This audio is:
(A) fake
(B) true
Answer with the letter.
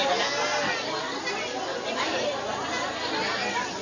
B